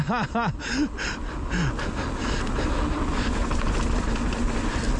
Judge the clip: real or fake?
real